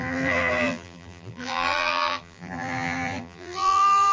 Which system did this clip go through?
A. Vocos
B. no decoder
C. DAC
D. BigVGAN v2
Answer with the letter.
D